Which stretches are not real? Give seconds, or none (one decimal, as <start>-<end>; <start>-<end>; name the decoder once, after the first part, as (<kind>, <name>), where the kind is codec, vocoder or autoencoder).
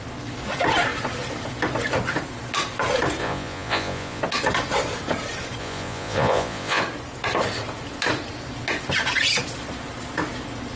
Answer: 3.2-4.2 (vocoder, Vocos); 5.6-6.8